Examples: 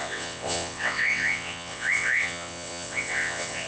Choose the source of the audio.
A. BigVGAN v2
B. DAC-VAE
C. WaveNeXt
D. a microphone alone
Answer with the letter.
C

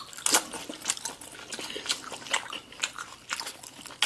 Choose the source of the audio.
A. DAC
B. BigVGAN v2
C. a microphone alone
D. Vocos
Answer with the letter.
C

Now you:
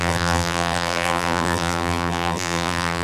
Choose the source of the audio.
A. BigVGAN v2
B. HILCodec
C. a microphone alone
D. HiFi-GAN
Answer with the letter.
A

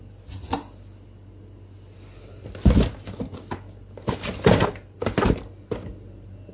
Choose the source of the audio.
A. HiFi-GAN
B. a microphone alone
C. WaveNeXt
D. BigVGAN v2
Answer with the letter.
B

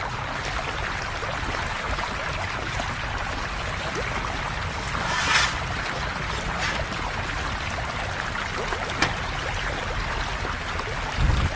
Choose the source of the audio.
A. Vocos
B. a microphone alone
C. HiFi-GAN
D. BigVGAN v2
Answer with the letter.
B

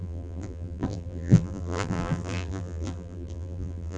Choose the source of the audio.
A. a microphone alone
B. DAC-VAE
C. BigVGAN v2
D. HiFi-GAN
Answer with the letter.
C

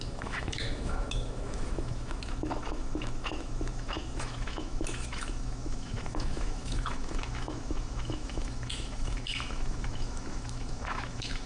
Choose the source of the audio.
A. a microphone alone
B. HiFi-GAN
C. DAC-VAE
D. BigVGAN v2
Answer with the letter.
C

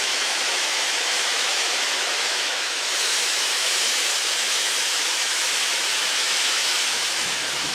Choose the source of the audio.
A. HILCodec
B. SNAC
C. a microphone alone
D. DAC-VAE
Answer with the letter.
D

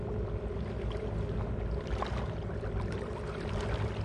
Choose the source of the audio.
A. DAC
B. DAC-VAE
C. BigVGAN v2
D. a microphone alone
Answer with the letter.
D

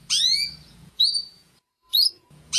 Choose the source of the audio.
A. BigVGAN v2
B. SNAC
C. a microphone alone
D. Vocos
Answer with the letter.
D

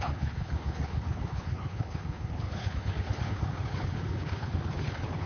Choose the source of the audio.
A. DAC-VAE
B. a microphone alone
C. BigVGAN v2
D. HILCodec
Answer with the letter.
D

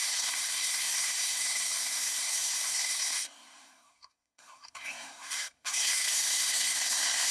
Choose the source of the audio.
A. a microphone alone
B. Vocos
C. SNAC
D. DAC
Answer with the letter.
C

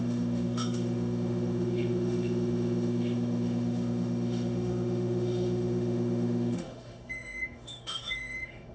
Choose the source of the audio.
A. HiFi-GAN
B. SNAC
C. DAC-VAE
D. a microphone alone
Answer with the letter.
C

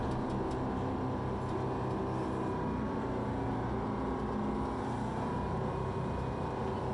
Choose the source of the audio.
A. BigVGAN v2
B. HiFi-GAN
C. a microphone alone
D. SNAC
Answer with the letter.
C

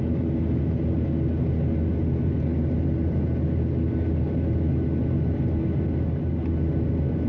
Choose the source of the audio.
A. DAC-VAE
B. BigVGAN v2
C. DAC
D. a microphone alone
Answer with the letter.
D